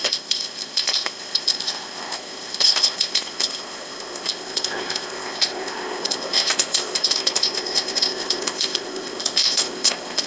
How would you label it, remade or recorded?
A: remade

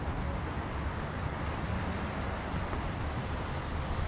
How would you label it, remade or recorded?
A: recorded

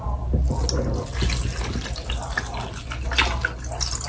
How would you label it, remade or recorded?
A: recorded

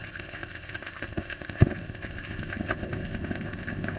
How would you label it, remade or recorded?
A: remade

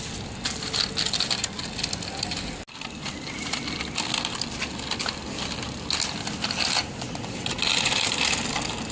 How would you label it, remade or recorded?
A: recorded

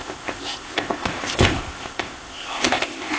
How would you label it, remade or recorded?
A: remade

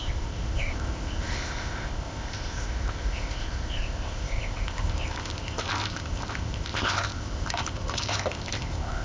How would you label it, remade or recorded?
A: remade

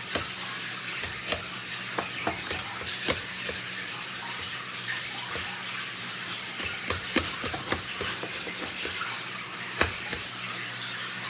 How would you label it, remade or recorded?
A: recorded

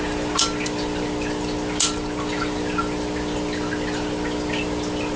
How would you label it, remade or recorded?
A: recorded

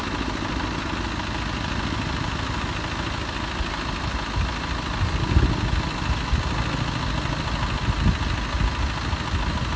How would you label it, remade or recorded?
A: recorded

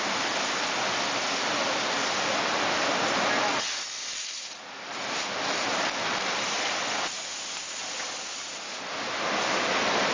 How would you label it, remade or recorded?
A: recorded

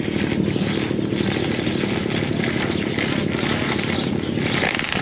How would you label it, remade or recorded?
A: recorded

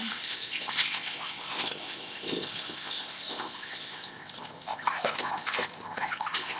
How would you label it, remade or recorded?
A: remade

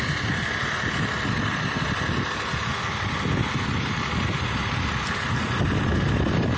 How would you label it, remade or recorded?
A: recorded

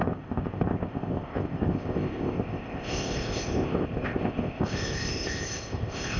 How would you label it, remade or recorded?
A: remade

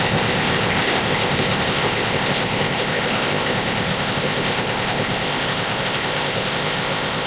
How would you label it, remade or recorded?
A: remade